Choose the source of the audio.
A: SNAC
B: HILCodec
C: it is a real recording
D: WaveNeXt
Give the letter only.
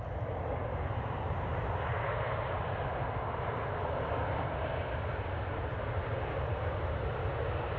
C